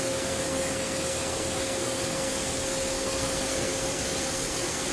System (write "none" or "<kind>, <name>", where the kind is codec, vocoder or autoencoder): codec, SNAC